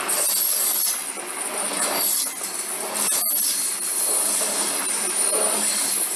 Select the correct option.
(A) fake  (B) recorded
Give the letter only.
B